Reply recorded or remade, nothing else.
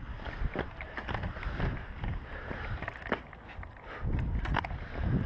recorded